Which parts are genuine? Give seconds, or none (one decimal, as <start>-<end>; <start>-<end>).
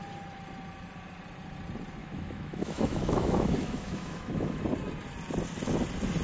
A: 0.0-2.0; 4.6-6.2